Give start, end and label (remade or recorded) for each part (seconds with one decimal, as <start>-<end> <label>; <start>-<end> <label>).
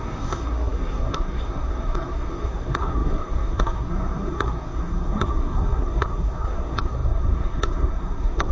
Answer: 0.0-8.5 remade